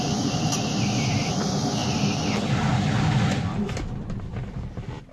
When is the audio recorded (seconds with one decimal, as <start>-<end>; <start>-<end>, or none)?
0.0-5.1

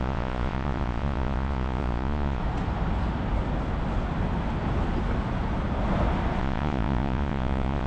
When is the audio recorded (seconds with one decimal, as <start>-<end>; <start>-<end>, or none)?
2.4-6.4

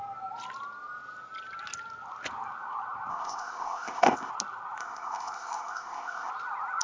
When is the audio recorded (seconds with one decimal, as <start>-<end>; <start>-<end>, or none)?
0.0-3.1; 4.3-4.8; 6.3-6.8

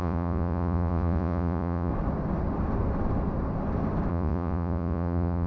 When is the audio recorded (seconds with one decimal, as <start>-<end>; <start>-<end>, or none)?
1.9-4.1

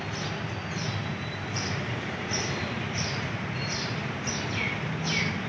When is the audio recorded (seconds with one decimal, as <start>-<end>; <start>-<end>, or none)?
0.0-1.0; 4.3-5.5

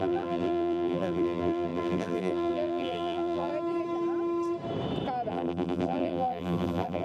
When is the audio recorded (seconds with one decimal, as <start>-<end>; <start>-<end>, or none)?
3.5-5.3

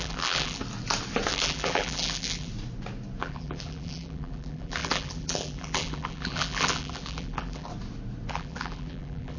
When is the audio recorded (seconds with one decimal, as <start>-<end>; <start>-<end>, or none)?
0.6-1.3; 2.5-3.2; 7.7-8.3

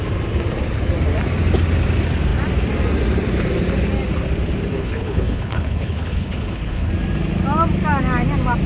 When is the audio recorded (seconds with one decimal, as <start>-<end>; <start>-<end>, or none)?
0.0-4.8; 6.9-8.7